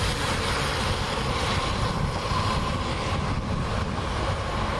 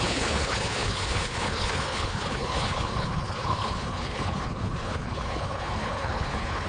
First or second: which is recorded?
first